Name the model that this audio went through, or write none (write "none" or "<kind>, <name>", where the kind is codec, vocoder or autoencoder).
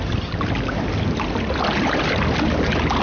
none